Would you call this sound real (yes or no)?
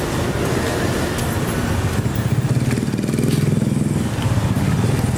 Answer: yes